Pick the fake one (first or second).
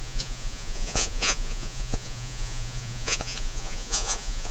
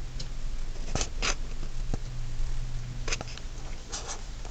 first